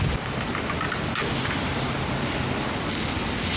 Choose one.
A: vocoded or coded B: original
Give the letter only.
B